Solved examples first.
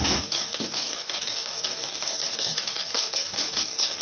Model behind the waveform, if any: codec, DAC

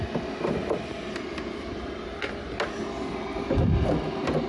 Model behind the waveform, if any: none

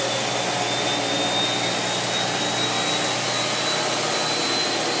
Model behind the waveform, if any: none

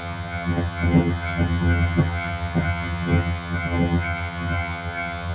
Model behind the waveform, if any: vocoder, HiFi-GAN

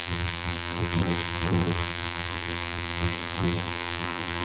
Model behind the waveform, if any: vocoder, BigVGAN v2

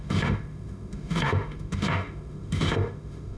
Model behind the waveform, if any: autoencoder, DAC-VAE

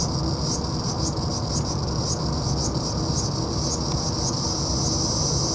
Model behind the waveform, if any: none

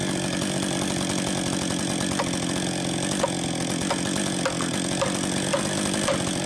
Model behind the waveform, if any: none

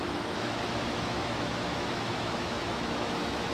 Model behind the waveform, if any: autoencoder, DAC-VAE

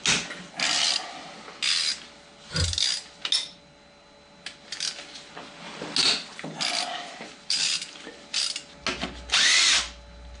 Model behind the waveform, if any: none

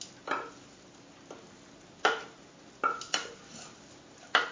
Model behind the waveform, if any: none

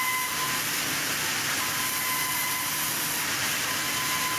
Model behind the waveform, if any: none